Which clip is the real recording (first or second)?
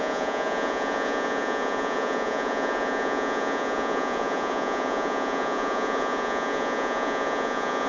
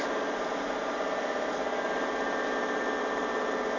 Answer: second